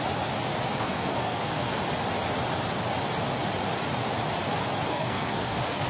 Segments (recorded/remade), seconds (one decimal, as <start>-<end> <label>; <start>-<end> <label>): 0.0-0.7 recorded; 0.7-1.8 remade; 1.8-4.9 recorded; 4.9-5.9 remade

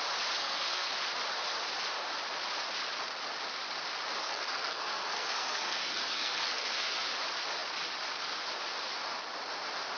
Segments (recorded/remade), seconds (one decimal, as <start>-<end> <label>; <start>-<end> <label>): 0.0-0.4 recorded; 0.4-0.9 remade; 0.9-4.2 recorded; 4.2-7.0 remade; 7.0-10.0 recorded